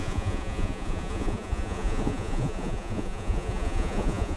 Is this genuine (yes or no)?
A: no